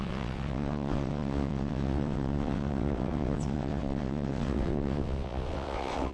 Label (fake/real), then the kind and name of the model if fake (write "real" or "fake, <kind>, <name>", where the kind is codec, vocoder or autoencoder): fake, vocoder, WaveNeXt